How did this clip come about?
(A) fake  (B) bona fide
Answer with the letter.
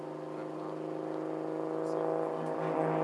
B